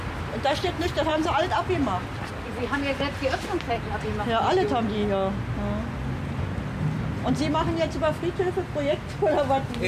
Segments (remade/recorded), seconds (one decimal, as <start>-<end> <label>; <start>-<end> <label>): 0.0-9.9 recorded